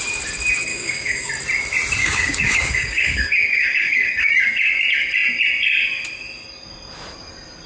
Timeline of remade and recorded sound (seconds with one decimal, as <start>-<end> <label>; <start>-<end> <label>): 0.0-0.7 recorded; 0.7-1.3 remade; 1.3-2.0 recorded; 2.0-4.3 remade; 4.3-7.7 recorded

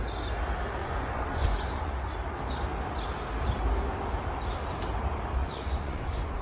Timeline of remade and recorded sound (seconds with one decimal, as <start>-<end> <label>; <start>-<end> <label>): 0.0-0.8 recorded; 0.8-1.9 remade; 1.9-5.4 recorded; 5.4-6.4 remade

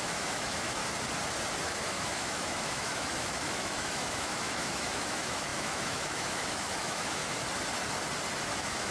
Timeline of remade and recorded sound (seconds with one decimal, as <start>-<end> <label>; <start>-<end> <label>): 0.0-0.8 remade; 0.8-1.7 recorded; 1.7-7.2 remade; 7.2-8.5 recorded; 8.5-8.9 remade

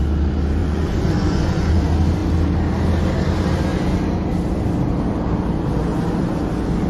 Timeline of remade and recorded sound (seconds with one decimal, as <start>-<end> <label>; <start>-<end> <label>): 0.0-0.6 recorded; 0.6-1.8 remade; 1.8-6.9 recorded

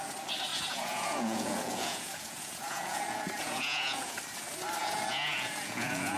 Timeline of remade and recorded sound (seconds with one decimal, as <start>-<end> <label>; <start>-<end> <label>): 0.0-0.5 recorded; 0.5-4.2 remade; 4.2-4.8 recorded; 4.8-6.2 remade